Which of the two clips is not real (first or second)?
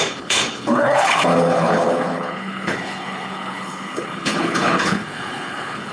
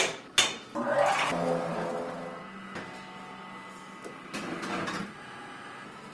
first